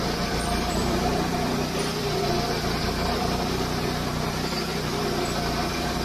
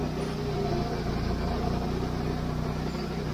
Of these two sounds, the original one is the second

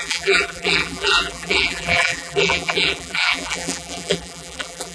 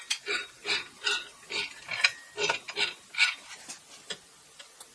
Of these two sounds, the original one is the second